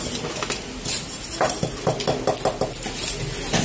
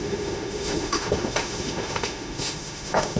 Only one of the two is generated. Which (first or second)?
second